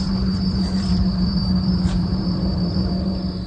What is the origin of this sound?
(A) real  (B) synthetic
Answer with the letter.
B